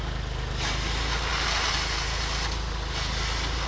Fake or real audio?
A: real